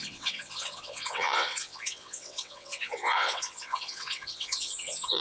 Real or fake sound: fake